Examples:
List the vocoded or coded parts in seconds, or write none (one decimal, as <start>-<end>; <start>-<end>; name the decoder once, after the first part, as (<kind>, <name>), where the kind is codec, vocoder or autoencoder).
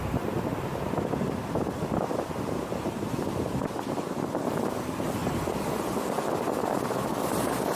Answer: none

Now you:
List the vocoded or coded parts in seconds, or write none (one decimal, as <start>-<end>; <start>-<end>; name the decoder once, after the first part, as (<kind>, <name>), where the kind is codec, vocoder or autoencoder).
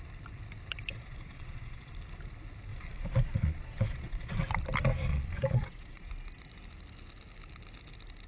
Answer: 0.9-1.9 (vocoder, Vocos); 2.7-4.4; 5.1-6.1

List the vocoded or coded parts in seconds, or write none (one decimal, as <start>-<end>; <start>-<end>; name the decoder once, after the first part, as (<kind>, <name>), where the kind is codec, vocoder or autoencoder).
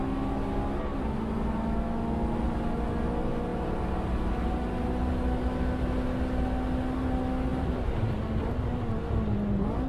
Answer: 7.5-8.5 (vocoder, BigVGAN v2)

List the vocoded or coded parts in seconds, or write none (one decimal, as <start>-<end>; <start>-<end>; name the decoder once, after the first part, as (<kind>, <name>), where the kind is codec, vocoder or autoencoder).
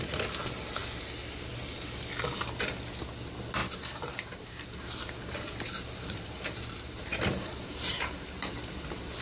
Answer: 3.6-8.7 (vocoder, BigVGAN v2)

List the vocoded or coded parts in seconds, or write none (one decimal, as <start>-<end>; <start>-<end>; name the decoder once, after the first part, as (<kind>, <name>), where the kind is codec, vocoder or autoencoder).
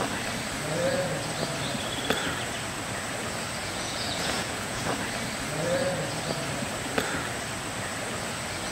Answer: 3.6-5.0 (vocoder, Vocos)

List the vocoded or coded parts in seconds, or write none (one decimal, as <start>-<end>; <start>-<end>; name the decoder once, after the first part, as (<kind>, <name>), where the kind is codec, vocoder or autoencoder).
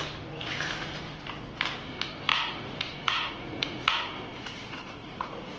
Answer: 2.3-3.9 (vocoder, Vocos); 4.3-5.6